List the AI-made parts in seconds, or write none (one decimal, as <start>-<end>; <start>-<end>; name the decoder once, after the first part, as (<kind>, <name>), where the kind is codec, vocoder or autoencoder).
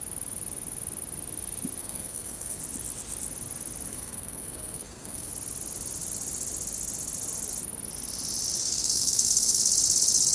1.8-2.6 (codec, SNAC); 3.9-5.3; 8.7-9.6